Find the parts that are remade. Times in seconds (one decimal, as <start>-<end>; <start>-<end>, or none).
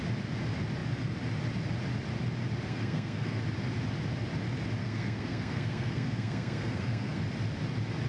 2.7-3.4; 4.8-7.2